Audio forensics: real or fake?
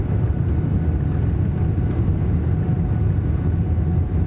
real